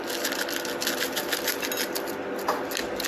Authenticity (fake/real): real